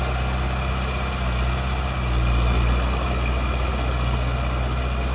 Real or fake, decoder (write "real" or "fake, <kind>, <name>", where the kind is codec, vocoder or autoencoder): real